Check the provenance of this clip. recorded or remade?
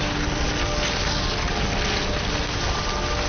recorded